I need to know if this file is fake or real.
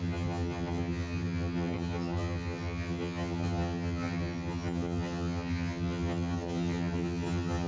fake